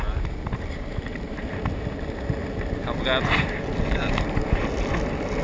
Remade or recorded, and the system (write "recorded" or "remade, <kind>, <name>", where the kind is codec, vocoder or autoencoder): recorded